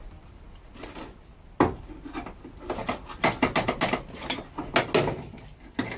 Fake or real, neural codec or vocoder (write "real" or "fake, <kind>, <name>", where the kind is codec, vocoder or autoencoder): real